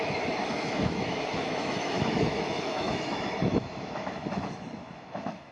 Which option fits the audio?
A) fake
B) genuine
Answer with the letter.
A